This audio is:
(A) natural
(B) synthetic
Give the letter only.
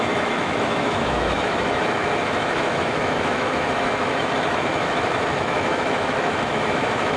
B